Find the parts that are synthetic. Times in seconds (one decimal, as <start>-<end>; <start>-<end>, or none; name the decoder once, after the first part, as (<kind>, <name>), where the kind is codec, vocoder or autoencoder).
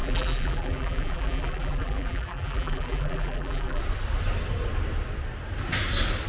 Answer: 0.0-3.8 (vocoder, BigVGAN v2)